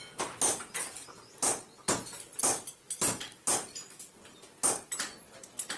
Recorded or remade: recorded